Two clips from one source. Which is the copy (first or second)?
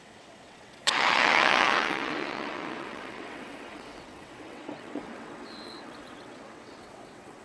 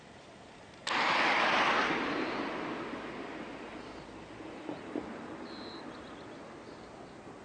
first